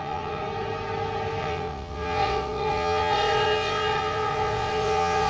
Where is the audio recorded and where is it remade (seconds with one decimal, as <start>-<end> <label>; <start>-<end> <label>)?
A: 0.0-0.4 remade; 0.4-1.4 recorded; 1.4-5.3 remade